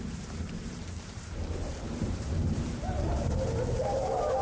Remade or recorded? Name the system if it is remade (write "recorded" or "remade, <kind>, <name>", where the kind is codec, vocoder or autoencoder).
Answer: remade, vocoder, BigVGAN v2